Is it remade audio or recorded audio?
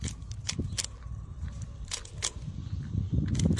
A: recorded